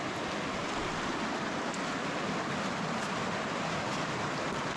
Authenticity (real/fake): real